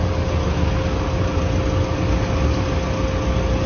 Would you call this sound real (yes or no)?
yes